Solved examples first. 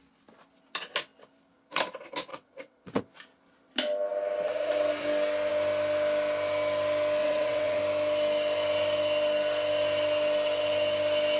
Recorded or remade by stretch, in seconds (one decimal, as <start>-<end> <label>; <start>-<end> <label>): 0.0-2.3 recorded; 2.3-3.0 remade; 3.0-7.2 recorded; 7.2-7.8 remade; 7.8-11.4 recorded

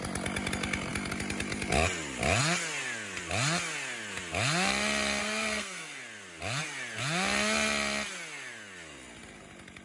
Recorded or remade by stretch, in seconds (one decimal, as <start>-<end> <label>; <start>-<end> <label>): 0.0-5.2 recorded; 5.2-6.0 remade; 6.0-9.8 recorded

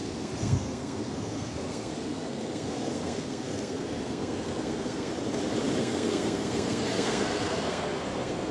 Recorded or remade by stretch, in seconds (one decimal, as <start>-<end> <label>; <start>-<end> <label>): 0.0-5.1 remade; 5.1-5.8 recorded; 5.8-8.5 remade

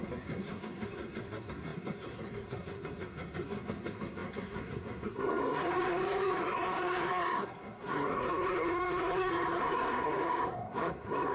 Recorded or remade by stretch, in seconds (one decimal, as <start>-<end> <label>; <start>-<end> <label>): 0.0-11.3 remade

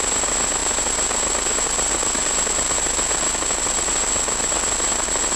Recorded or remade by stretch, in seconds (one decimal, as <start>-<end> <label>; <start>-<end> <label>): 0.0-5.4 recorded